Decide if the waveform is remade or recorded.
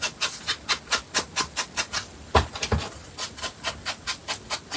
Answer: recorded